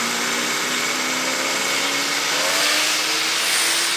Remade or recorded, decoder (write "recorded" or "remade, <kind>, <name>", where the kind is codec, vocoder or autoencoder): recorded